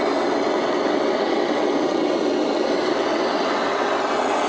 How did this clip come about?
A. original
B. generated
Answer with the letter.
B